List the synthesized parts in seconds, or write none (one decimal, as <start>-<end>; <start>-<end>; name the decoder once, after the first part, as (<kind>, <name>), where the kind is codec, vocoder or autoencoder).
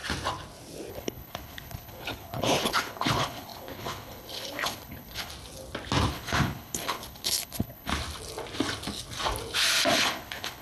0.9-5.3 (codec, HILCodec); 6.1-7.9; 9.9-10.6